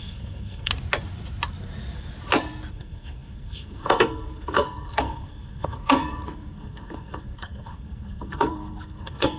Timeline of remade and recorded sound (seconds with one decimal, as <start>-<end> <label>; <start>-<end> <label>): 0.0-0.7 remade; 0.7-2.7 recorded; 2.7-9.4 remade